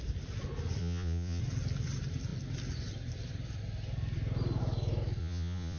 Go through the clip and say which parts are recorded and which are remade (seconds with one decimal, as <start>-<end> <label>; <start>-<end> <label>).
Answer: 0.0-0.8 recorded; 0.8-1.4 remade; 1.4-5.2 recorded; 5.2-5.8 remade